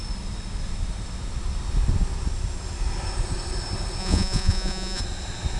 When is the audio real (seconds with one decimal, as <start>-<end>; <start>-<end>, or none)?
0.0-4.0; 5.0-5.6